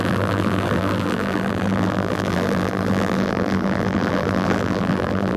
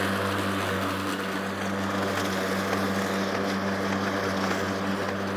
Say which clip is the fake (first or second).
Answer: first